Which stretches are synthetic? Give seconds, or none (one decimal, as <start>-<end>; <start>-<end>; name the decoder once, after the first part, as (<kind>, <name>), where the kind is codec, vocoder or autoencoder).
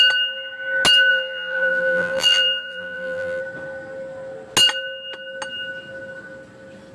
1.1-3.4 (vocoder, BigVGAN v2)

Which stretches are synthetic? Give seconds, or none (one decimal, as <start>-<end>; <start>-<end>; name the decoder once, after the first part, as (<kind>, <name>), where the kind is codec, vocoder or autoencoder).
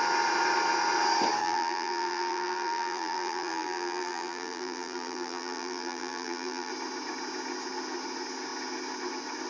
1.4-6.7 (vocoder, BigVGAN v2)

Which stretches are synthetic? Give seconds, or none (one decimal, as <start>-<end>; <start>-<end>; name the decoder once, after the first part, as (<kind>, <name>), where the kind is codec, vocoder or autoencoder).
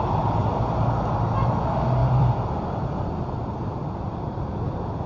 2.0-5.1 (vocoder, BigVGAN v2)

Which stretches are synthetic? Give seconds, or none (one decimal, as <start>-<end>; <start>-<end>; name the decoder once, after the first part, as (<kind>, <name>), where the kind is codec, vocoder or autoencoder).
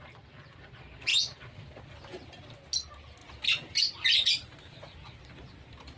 1.1-2.5 (vocoder, BigVGAN v2); 3.2-3.8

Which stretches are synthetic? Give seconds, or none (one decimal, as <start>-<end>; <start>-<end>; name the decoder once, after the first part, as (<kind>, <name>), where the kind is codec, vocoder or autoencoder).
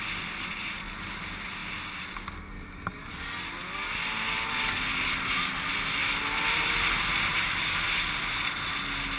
none